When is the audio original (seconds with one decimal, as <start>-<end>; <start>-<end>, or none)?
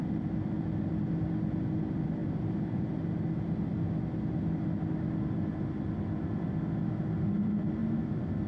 0.0-8.5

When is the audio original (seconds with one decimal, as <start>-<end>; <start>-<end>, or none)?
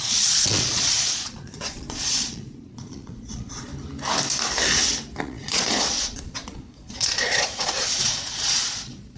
3.7-5.2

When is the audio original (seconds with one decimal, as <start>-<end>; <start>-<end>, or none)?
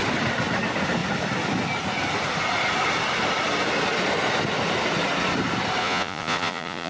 0.0-5.8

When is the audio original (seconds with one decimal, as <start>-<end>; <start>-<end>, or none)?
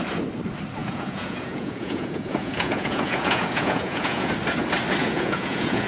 0.0-0.8; 4.3-5.0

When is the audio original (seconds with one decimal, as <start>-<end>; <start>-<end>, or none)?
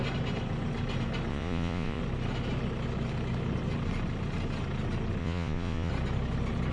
0.0-1.3; 2.0-5.2; 5.9-6.7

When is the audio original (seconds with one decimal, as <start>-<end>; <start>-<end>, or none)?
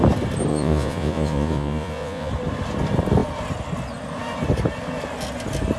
0.0-0.5; 2.3-5.8